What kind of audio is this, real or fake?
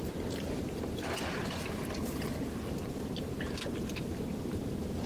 real